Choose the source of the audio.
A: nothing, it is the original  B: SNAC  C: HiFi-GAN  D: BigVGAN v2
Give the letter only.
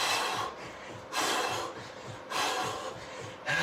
A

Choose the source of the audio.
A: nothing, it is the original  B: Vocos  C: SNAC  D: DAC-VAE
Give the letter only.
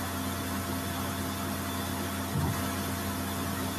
A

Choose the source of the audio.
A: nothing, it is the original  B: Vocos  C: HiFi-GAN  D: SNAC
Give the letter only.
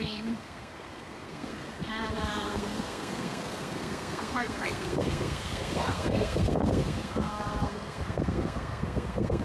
D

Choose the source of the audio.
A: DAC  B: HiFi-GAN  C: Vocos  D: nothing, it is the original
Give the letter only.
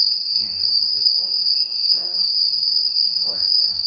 A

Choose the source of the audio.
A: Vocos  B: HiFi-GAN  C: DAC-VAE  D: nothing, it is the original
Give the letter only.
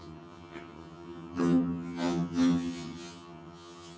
B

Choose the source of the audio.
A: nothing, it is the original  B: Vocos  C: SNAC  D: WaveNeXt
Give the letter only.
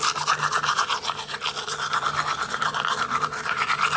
A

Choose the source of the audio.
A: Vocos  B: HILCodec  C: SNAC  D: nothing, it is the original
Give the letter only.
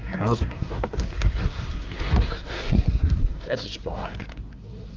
C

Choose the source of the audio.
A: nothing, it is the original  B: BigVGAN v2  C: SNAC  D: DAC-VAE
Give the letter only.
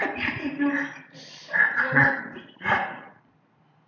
B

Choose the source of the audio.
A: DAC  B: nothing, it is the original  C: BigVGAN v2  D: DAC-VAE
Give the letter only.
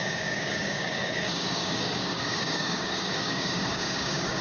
A